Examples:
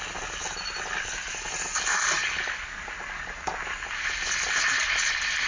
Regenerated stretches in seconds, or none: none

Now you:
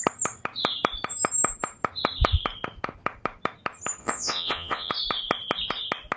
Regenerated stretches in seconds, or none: 4.0-4.9 (vocoder, Vocos)

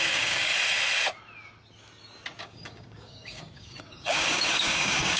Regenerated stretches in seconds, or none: 0.0-0.5 (codec, DAC); 2.4-5.2

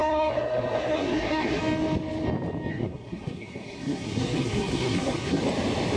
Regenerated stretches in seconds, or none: 0.0-1.6 (codec, SNAC); 2.7-5.4

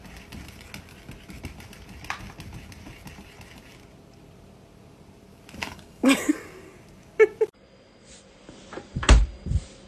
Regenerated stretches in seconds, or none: 5.6-6.3 (codec, DAC)

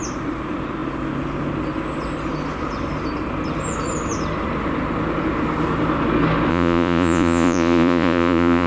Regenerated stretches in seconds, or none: 6.5-8.7 (vocoder, Vocos)